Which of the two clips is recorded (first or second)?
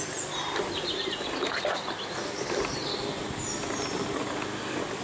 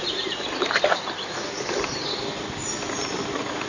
first